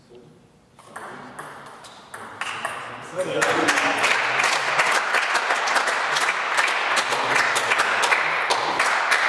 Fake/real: real